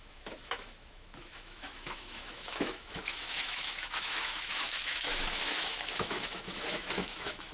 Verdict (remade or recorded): remade